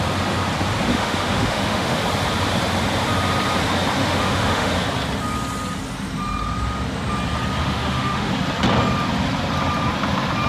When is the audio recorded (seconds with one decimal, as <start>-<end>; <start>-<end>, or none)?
0.0-0.9; 2.0-4.0; 4.7-7.6; 8.3-10.5